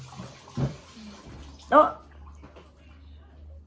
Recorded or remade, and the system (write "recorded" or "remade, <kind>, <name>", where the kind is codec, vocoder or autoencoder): recorded